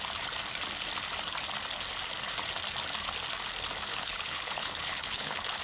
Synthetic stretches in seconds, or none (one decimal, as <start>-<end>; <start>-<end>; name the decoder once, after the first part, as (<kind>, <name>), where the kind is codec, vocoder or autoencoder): 3.9-5.6 (codec, HILCodec)